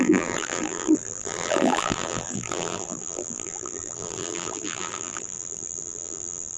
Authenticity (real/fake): fake